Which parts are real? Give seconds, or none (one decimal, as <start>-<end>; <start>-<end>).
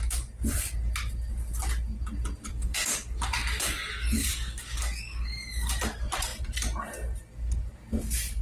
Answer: 0.0-2.5; 5.8-8.4